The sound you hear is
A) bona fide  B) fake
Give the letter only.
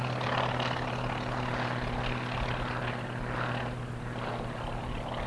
A